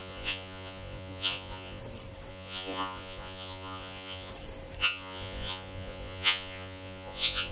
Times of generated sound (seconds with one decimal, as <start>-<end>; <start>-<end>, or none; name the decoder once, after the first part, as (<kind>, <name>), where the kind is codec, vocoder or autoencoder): 0.0-1.8 (vocoder, Vocos); 2.3-4.3; 4.8-7.5